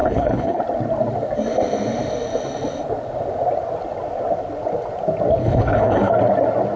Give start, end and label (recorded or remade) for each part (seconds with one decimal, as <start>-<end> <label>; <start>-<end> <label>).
0.0-0.6 remade; 0.6-5.4 recorded; 5.4-6.1 remade; 6.1-6.8 recorded